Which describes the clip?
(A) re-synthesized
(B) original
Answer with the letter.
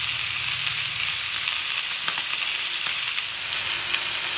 B